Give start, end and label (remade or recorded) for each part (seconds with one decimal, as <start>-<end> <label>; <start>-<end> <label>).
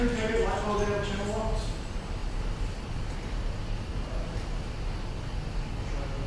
0.0-6.3 recorded